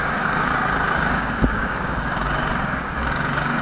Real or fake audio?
fake